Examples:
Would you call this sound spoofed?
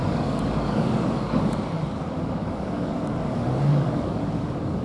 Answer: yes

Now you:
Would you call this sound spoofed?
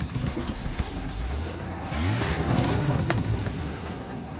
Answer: yes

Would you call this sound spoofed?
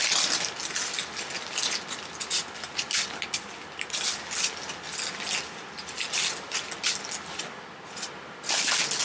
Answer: no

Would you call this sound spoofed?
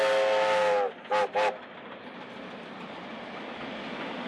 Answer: no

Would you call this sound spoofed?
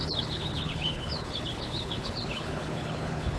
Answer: yes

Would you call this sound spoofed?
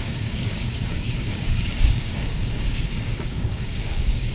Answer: yes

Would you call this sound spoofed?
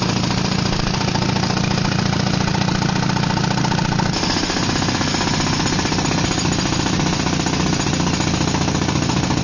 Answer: no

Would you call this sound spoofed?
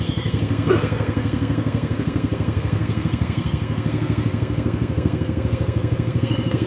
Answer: yes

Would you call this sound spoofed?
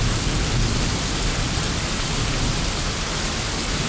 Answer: no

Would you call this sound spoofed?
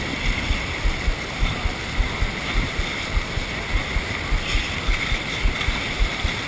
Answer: no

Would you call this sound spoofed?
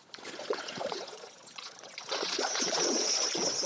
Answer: yes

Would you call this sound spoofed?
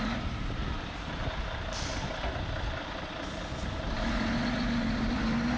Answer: no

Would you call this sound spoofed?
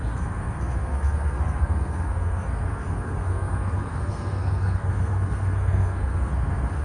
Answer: yes